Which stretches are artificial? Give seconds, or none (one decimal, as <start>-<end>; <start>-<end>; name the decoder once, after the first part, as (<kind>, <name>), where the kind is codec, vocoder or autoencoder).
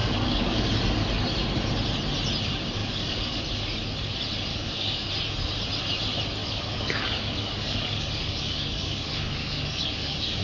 0.0-0.7 (codec, DAC); 2.8-3.4; 4.5-5.1; 6.4-10.4